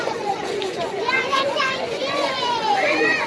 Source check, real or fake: fake